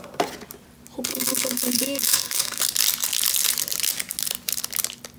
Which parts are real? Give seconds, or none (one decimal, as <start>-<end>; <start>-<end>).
0.0-1.1; 2.6-5.2